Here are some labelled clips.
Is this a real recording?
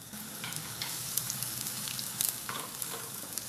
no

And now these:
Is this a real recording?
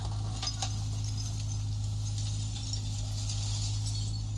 yes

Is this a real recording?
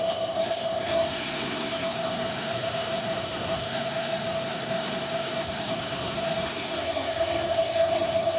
no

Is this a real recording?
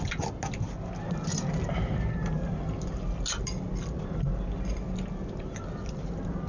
yes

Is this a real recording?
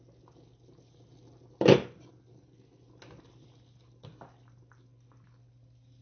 yes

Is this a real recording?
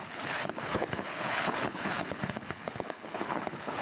no